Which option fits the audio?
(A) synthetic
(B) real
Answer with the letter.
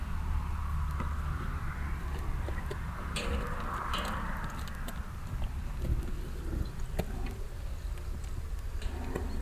B